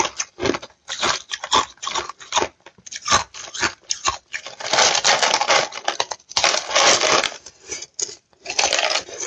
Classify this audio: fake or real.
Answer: real